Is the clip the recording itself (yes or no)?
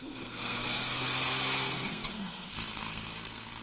no